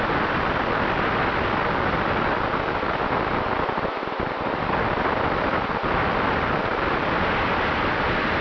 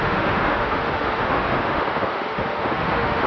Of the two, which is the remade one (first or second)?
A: second